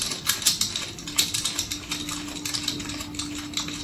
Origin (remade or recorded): recorded